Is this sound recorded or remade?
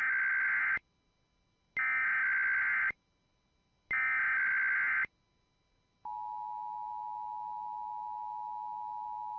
recorded